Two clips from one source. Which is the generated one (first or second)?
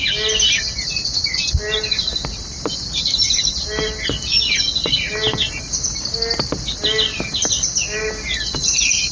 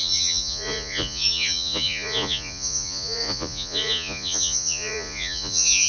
second